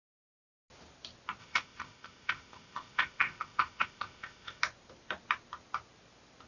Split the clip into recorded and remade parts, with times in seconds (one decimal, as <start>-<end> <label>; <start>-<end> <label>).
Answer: 0.0-1.4 recorded; 1.4-4.6 remade; 4.6-6.5 recorded